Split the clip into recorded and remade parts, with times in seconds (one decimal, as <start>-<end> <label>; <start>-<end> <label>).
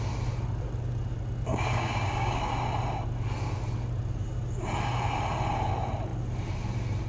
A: 0.0-1.5 recorded; 1.5-2.5 remade; 2.5-7.1 recorded